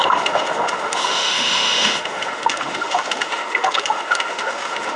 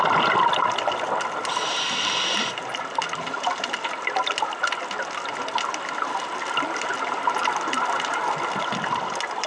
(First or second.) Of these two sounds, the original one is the second